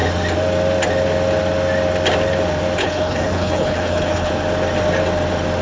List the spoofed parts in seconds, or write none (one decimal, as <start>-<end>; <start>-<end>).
2.8-4.3